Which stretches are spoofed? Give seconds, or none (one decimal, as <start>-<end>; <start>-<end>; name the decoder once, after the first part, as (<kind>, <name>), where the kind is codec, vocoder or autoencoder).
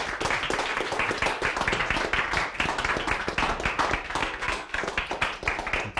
4.2-4.9 (codec, SNAC)